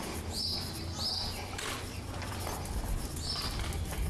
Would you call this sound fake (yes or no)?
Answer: no